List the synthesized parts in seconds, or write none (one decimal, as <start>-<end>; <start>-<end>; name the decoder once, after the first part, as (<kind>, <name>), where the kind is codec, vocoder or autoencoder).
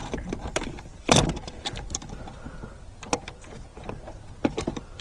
0.0-3.0 (vocoder, BigVGAN v2)